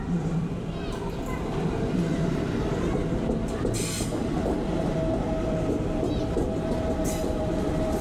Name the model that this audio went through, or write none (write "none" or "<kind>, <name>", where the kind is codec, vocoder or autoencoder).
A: none